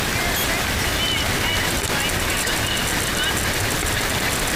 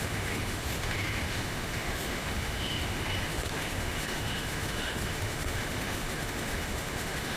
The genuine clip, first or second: first